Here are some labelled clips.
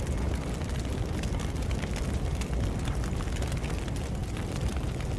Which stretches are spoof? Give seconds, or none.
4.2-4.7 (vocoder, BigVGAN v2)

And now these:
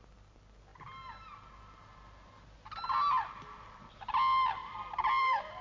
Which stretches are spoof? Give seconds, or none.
4.6-5.6 (vocoder, BigVGAN v2)

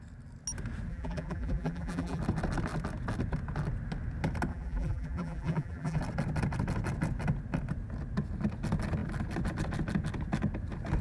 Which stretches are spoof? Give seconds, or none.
0.9-2.2 (vocoder, BigVGAN v2); 4.5-6.0

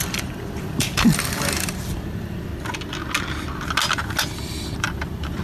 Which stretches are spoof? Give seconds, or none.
0.0-2.5 (vocoder, BigVGAN v2); 4.8-5.4

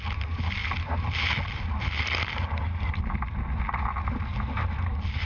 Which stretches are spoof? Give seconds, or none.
none

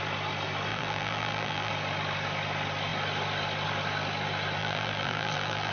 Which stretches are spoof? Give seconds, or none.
0.7-1.7 (vocoder, BigVGAN v2); 4.6-5.7

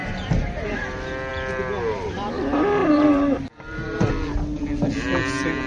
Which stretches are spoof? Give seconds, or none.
0.0-0.9 (vocoder, BigVGAN v2); 2.8-4.1